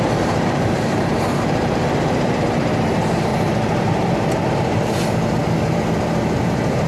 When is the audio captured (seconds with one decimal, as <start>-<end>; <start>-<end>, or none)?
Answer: 3.3-3.8; 5.4-6.4